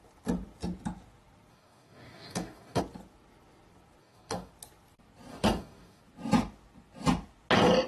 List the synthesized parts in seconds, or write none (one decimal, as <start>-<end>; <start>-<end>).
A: 1.5-2.8; 4.0-4.5; 5.3-6.0